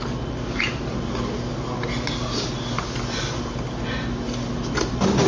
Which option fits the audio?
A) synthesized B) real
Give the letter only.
B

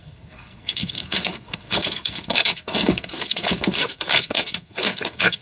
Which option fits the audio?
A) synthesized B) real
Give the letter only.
A